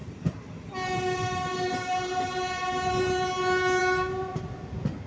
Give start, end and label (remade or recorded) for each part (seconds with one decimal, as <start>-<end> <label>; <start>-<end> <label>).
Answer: 0.0-5.1 recorded

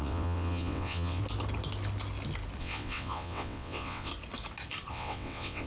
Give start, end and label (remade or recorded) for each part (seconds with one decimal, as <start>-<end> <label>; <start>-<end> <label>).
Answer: 0.0-1.2 remade; 1.2-2.6 recorded; 2.6-4.1 remade; 4.1-4.9 recorded; 4.9-5.7 remade

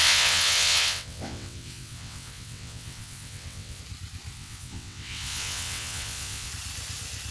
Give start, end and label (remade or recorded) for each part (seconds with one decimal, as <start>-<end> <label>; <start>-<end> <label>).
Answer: 0.0-3.8 remade; 3.8-4.3 recorded; 4.3-6.5 remade; 6.5-7.3 recorded

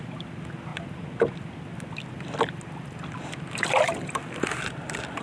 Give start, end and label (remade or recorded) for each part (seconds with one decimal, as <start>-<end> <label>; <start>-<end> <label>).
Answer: 0.0-5.2 recorded

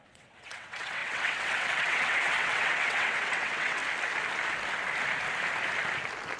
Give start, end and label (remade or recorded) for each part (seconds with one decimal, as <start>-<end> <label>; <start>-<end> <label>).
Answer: 0.0-3.8 remade; 3.8-6.4 recorded

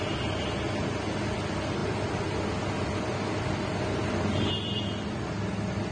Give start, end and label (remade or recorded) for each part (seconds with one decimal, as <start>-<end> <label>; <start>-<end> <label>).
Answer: 0.0-5.9 recorded

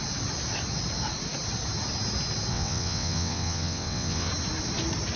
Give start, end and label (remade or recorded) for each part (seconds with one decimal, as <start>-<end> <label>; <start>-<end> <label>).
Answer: 0.0-2.5 recorded; 2.5-4.3 remade; 4.3-5.2 recorded

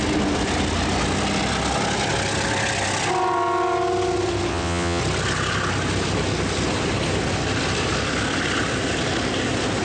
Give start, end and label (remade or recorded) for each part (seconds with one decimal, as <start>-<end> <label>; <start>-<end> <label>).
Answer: 0.0-4.5 recorded; 4.5-5.0 remade; 5.0-9.8 recorded